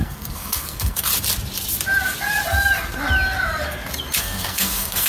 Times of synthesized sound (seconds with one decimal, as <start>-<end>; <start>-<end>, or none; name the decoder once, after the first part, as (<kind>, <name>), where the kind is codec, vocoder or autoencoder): 0.0-1.1 (codec, SNAC); 4.2-5.1